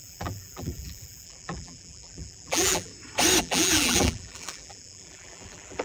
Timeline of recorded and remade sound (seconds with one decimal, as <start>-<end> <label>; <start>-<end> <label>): 0.0-2.9 remade; 2.9-3.4 recorded; 3.4-5.8 remade